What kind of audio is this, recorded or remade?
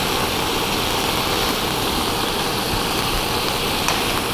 recorded